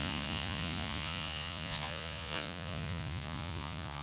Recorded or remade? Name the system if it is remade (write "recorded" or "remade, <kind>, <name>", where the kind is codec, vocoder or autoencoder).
remade, vocoder, Vocos